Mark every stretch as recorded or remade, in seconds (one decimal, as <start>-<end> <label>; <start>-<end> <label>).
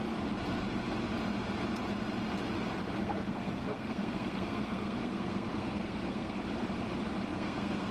0.0-3.0 recorded; 3.0-6.4 remade; 6.4-7.3 recorded; 7.3-7.9 remade